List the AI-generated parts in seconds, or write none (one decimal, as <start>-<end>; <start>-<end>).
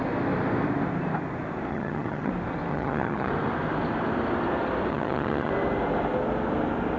1.7-2.3; 2.7-3.3; 4.9-5.5